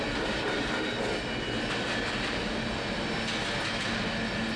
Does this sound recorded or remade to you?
recorded